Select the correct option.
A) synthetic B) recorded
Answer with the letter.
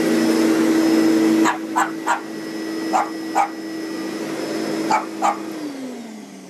B